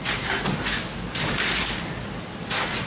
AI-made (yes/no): no